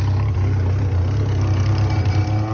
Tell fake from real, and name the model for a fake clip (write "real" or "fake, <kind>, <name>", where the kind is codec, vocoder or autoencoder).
real